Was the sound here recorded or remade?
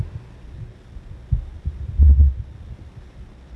recorded